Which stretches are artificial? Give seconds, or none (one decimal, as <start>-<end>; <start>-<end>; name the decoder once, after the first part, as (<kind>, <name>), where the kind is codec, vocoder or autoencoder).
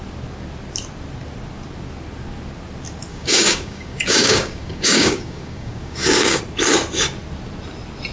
3.1-6.4 (codec, DAC)